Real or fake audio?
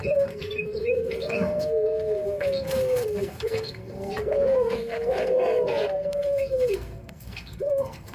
fake